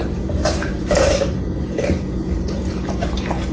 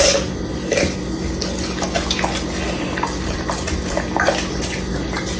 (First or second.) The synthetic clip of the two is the first